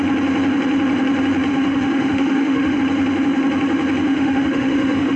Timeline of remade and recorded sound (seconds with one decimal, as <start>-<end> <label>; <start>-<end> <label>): 0.0-1.5 recorded; 1.5-2.8 remade; 2.8-4.1 recorded; 4.1-5.2 remade